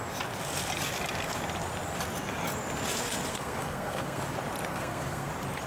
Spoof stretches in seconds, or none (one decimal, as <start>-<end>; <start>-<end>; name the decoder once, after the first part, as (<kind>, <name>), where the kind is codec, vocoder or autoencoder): 3.3-4.2 (codec, SNAC); 4.7-5.3